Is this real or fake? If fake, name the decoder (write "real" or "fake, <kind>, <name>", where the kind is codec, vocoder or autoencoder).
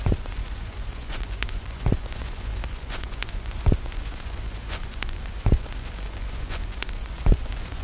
fake, vocoder, Vocos